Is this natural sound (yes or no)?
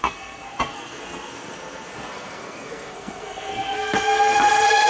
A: no